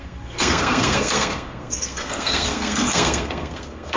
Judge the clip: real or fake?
fake